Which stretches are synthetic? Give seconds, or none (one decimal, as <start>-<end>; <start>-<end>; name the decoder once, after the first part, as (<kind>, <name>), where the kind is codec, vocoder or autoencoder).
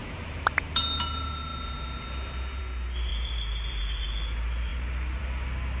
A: 0.0-0.6 (vocoder, BigVGAN v2); 3.1-3.9